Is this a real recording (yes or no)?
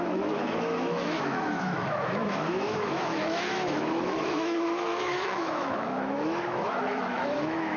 no